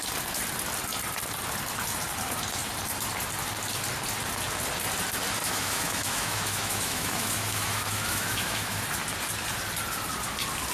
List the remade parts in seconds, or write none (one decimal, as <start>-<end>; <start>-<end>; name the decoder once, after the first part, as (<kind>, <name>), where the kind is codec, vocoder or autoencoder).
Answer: 5.4-8.8 (autoencoder, DAC-VAE)